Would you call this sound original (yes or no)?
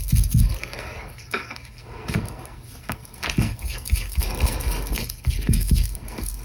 no